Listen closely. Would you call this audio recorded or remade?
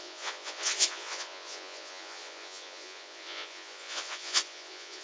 remade